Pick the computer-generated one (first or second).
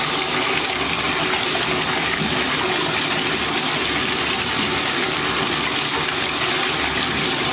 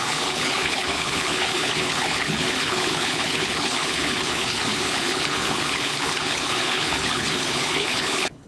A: second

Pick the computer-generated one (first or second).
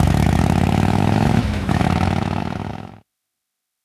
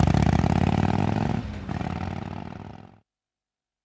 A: first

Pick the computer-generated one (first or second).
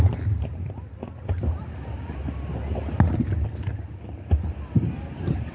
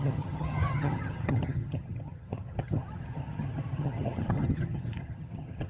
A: second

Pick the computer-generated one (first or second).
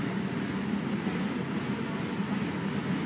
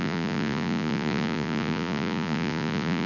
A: second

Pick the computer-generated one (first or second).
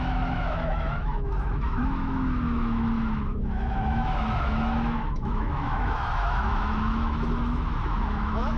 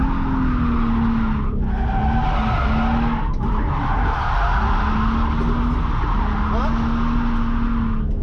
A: first